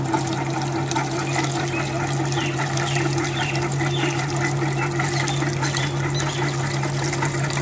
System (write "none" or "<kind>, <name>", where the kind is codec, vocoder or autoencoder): none